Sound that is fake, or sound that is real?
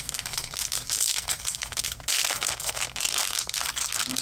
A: fake